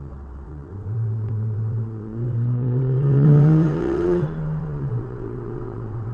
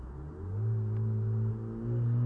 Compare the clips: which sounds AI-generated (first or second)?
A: first